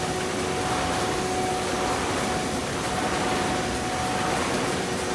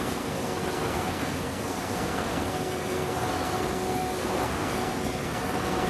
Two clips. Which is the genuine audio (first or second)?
first